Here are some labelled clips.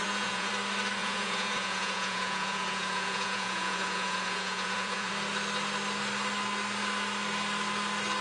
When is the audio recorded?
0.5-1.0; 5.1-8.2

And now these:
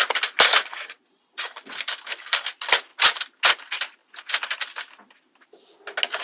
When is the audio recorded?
0.0-0.6; 1.6-6.2

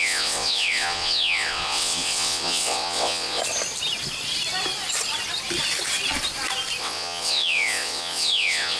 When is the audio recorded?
3.4-6.8

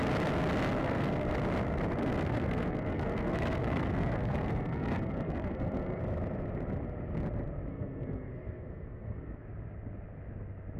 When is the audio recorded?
0.0-0.8; 1.3-2.0; 6.0-7.7; 9.4-10.8

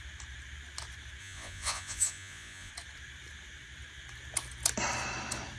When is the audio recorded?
0.0-1.2; 2.7-5.6